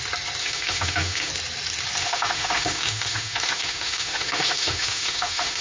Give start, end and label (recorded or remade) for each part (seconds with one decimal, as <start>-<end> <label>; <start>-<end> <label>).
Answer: 0.0-0.4 recorded; 0.4-1.3 remade; 1.3-2.0 recorded; 2.0-5.6 remade